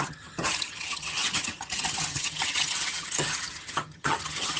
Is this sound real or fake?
fake